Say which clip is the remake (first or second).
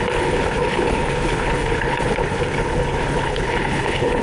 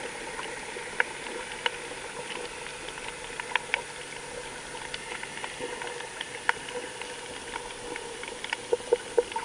first